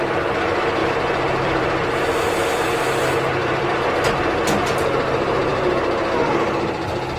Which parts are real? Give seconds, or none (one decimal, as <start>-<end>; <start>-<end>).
0.0-0.8; 2.2-3.4; 3.9-5.5; 6.6-7.2